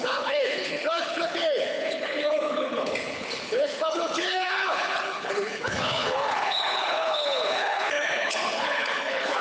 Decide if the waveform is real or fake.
fake